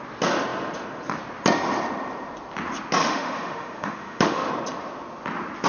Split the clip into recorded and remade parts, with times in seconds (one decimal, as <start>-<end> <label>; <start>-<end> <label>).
0.0-3.0 recorded; 3.0-4.5 remade; 4.5-5.7 recorded